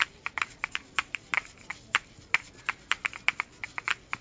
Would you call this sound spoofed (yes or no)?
yes